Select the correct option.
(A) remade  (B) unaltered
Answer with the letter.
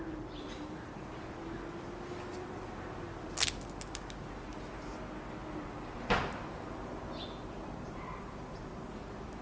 B